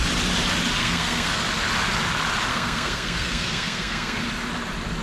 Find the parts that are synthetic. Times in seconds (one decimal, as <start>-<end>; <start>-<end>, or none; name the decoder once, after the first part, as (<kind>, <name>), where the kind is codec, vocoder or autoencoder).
0.8-1.4 (codec, SNAC); 2.5-4.2